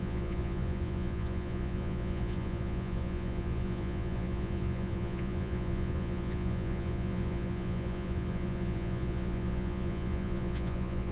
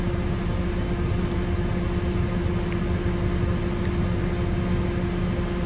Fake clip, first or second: first